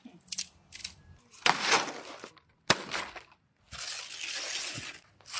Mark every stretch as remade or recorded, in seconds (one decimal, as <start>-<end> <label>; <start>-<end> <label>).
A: 0.0-5.4 recorded